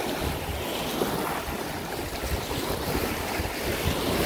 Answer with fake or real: real